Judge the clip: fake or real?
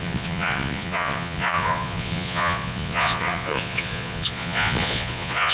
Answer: fake